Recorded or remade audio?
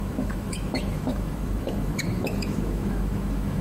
remade